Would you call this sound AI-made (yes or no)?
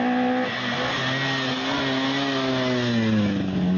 no